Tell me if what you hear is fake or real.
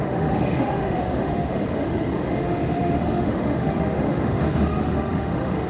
fake